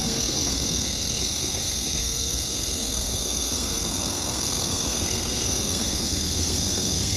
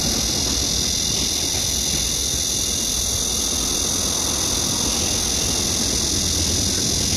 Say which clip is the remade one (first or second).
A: first